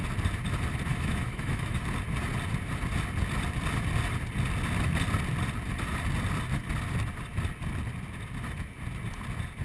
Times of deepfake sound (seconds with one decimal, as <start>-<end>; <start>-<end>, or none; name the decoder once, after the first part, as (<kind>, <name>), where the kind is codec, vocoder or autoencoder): 0.9-1.8 (autoencoder, DAC-VAE)